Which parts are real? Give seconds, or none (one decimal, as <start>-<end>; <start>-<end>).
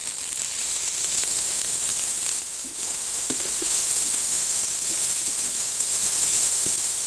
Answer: 0.0-0.6